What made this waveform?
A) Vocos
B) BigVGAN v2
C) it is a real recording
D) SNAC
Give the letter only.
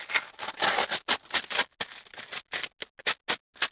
C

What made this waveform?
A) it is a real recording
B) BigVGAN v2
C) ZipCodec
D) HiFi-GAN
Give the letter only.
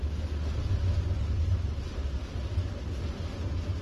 A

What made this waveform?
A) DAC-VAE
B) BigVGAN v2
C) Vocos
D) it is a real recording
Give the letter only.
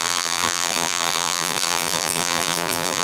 B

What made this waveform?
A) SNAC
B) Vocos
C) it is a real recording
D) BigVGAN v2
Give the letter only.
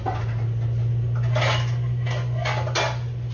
C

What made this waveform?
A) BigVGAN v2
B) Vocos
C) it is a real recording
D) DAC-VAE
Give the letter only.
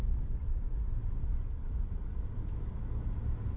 C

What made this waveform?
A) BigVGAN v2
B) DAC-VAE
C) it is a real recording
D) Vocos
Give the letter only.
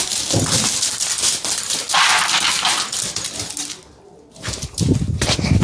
C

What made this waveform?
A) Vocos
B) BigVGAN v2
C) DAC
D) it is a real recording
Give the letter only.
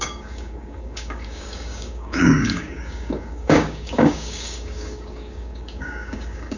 C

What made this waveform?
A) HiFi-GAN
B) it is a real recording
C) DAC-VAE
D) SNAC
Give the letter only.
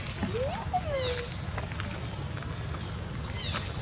B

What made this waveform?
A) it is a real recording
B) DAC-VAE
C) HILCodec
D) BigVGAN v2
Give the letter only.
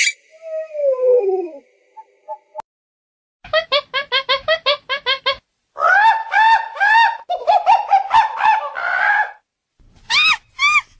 A